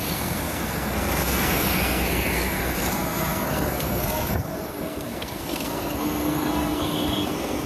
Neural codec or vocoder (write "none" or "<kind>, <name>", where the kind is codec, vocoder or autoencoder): codec, SNAC